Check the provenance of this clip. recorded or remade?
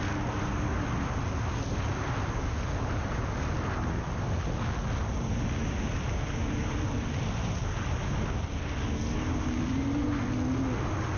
recorded